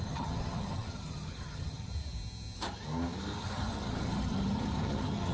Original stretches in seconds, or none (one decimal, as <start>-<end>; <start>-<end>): 1.9-3.4